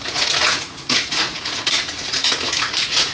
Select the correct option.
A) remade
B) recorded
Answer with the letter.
A